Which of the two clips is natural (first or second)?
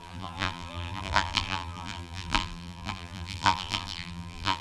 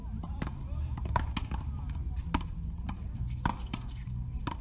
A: second